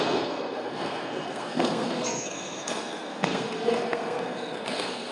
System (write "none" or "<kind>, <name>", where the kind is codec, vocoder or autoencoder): codec, SNAC